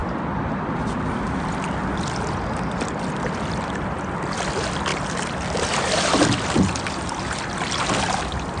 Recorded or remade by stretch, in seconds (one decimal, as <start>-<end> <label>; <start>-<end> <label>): 0.0-8.6 recorded